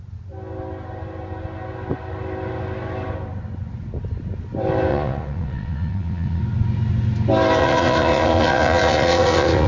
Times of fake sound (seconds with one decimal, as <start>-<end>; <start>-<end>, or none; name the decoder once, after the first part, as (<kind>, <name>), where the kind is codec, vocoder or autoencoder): 4.9-6.4 (vocoder, Vocos); 7.6-9.7